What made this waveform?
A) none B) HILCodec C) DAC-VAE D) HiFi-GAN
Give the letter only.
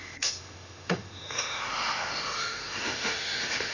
C